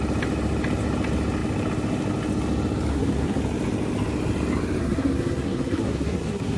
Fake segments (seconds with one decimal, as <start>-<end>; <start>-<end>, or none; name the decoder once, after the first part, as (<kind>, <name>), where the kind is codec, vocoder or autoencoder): 2.9-3.4 (codec, SNAC); 4.8-6.6

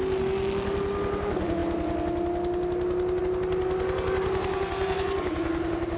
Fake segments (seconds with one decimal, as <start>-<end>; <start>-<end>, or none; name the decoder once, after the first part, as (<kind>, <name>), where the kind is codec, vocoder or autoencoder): none

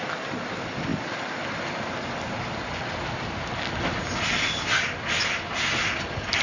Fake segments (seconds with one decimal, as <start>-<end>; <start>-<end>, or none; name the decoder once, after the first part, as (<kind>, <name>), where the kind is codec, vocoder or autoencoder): none